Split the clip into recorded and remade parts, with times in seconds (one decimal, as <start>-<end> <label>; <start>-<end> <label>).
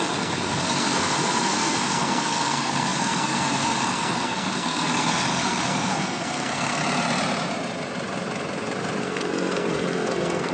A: 0.0-6.8 remade; 6.8-9.0 recorded; 9.0-10.5 remade